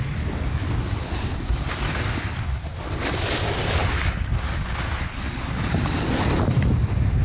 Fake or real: real